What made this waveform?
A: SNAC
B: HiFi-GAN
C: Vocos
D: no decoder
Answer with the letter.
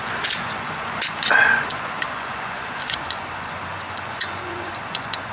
C